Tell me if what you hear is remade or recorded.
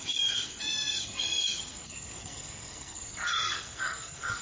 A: remade